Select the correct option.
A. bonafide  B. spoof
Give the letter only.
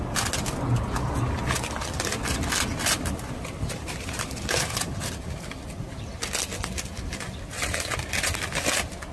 A